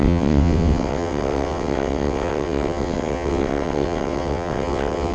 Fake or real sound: fake